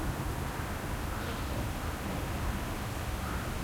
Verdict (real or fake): real